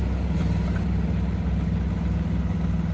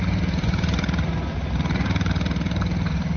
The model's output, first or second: second